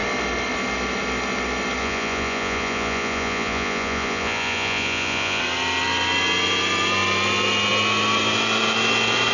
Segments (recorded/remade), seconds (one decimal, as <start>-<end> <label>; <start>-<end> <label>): 0.0-1.8 recorded; 1.8-5.4 remade; 5.4-9.3 recorded

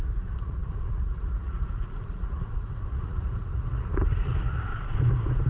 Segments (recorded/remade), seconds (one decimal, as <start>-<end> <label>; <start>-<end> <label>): 0.0-4.7 remade; 4.7-5.5 recorded

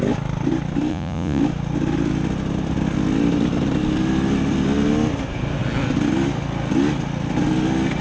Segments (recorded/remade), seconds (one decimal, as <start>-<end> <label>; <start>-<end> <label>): 0.0-0.9 recorded; 0.9-1.4 remade; 1.4-8.0 recorded

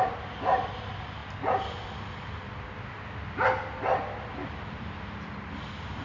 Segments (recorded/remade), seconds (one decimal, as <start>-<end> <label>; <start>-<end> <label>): 0.0-6.0 recorded

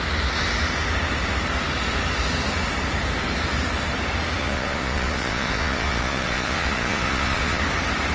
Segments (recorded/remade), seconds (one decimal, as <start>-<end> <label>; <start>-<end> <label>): 0.0-4.4 recorded; 4.4-7.6 remade; 7.6-8.1 recorded

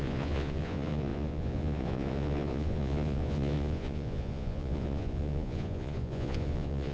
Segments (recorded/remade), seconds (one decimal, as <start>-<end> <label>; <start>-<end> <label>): 0.0-6.9 remade

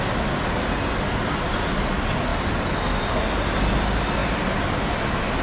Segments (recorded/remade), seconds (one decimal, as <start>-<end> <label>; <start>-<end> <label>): 0.0-5.4 recorded

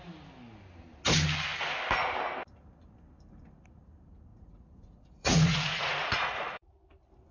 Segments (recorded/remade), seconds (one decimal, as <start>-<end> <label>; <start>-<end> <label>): 0.0-4.3 recorded; 4.3-6.7 remade; 6.7-7.3 recorded